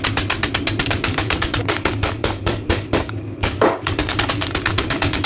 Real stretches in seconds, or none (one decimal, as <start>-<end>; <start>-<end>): 0.0-1.1; 4.3-4.7